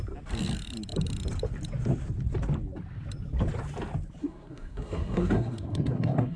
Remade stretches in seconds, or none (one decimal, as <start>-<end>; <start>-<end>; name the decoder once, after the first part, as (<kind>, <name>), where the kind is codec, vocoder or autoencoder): 4.2-6.4 (codec, SNAC)

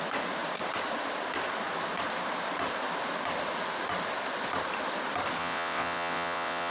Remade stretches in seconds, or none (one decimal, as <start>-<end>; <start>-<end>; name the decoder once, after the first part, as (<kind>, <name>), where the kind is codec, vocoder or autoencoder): 5.4-6.7 (vocoder, WaveNeXt)

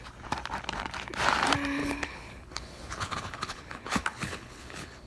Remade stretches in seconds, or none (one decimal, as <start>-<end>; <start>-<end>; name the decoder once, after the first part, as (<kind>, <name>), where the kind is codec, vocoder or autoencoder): 1.8-5.1 (codec, HILCodec)

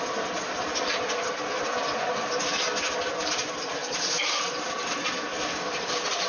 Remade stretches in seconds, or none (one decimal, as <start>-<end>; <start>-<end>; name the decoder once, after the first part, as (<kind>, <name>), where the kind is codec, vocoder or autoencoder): 0.0-2.5 (vocoder, BigVGAN v2); 3.2-6.3